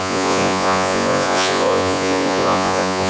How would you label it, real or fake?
fake